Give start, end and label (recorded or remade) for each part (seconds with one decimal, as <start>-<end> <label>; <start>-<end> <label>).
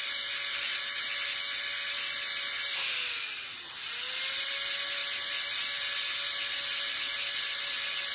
0.0-8.1 recorded